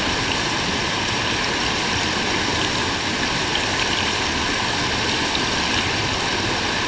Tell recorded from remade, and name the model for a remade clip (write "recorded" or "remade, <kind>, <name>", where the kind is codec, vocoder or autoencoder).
recorded